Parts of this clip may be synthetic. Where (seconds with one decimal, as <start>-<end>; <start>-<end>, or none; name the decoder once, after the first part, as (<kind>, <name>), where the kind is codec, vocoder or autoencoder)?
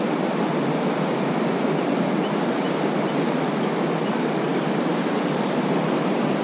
none